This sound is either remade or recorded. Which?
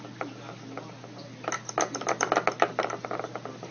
recorded